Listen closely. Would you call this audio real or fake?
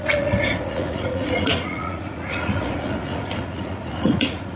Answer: fake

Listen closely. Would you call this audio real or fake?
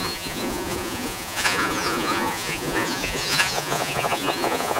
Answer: fake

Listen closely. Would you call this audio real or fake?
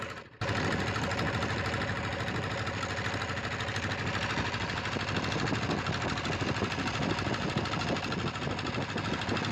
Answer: real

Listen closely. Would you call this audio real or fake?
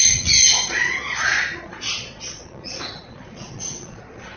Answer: fake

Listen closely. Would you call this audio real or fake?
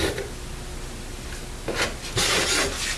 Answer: real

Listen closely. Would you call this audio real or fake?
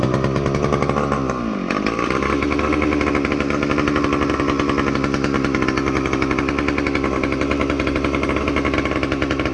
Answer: real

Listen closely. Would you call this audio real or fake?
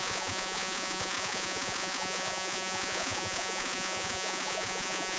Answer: fake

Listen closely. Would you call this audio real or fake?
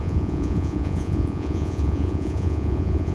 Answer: fake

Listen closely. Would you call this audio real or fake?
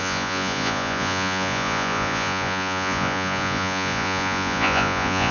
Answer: fake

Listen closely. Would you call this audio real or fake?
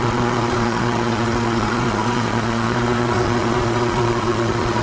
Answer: fake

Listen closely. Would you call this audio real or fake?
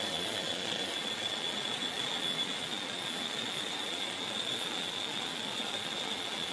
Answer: fake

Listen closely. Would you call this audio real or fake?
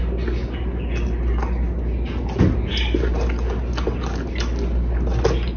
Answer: real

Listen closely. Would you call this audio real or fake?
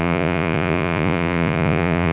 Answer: fake